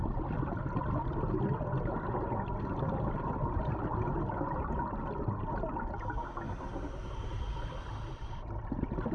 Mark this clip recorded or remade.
recorded